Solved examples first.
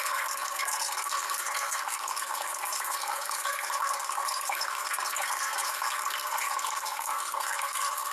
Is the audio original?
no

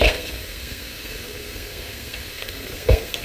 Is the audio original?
no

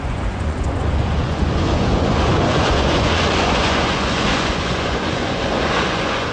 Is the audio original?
no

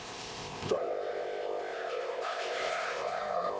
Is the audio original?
no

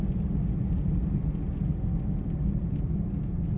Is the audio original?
yes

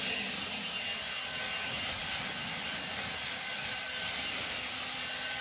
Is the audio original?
yes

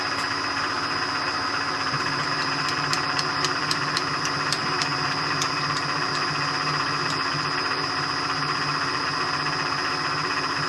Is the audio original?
no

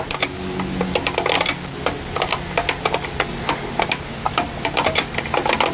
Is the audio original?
yes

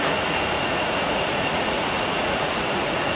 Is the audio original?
no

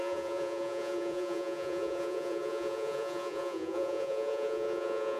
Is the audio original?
no